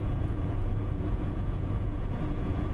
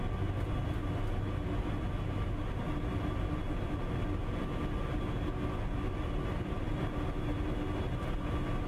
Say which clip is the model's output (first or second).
first